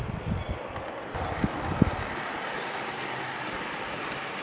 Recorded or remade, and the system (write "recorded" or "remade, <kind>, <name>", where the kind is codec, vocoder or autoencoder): recorded